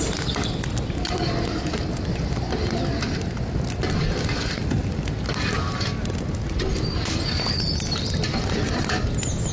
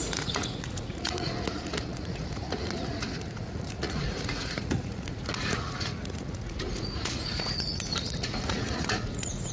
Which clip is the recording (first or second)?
first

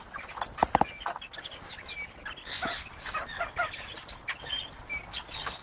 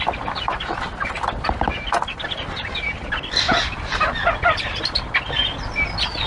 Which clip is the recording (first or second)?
first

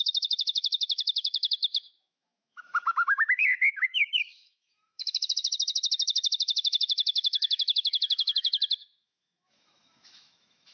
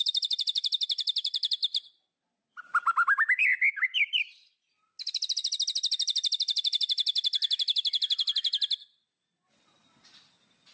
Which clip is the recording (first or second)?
second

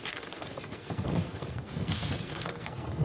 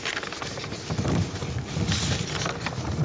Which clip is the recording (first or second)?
second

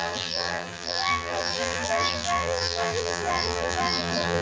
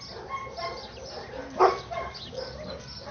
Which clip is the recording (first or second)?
second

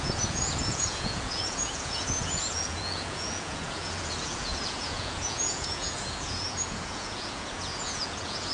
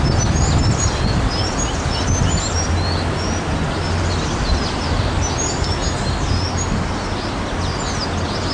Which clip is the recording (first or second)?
second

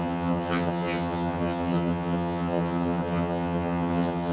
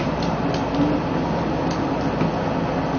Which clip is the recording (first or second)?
second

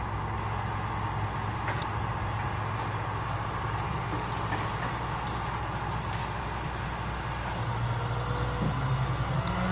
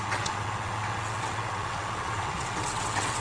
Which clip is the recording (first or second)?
first